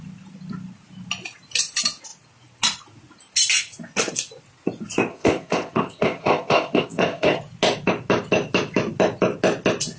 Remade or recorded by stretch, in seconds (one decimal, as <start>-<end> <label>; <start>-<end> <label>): 0.0-5.1 recorded; 5.1-7.4 remade; 7.4-10.0 recorded